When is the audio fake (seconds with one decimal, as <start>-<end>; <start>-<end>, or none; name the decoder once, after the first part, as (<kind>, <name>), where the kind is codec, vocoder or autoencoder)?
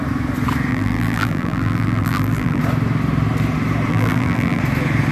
0.7-2.6 (vocoder, BigVGAN v2); 3.9-4.6